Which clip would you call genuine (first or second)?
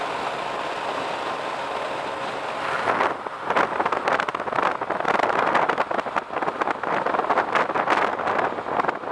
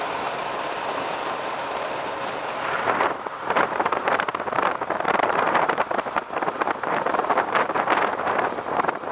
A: first